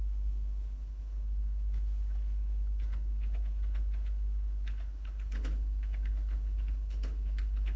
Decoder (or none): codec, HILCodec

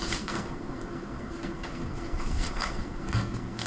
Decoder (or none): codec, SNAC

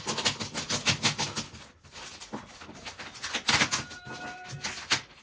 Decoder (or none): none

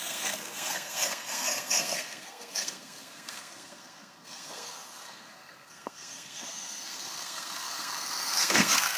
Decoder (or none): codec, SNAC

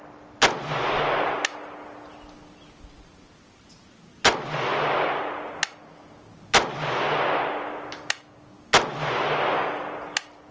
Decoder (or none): none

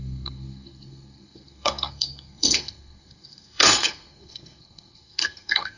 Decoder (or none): codec, SNAC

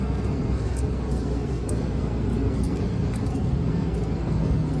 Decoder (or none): codec, SNAC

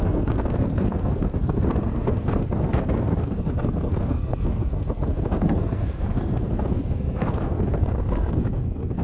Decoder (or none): codec, SNAC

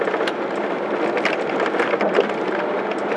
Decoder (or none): none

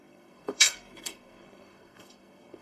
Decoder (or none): codec, SNAC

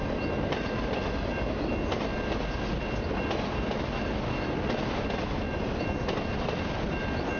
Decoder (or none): none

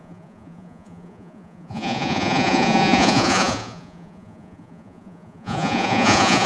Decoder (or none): vocoder, Vocos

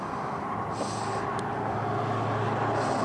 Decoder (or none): none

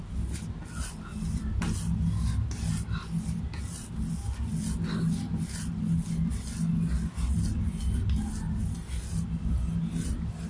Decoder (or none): none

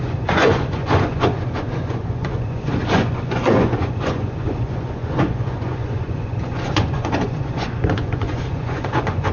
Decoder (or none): vocoder, Vocos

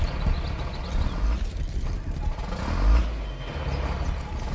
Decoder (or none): none